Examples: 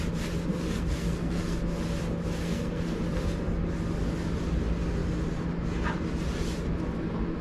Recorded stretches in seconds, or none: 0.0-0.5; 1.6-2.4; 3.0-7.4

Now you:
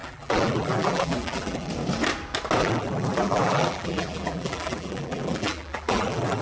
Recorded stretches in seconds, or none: 1.7-2.6

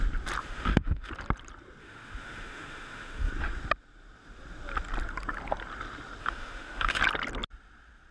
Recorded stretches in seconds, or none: 0.0-0.4; 1.1-1.8; 3.3-6.2; 7.0-8.1

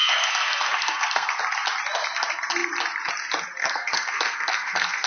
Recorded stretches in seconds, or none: 1.4-3.6